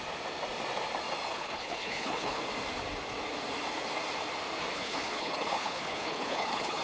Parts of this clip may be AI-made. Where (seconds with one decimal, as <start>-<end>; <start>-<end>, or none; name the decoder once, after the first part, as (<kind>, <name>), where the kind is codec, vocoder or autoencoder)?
1.3-2.4 (codec, HILCodec); 4.7-6.8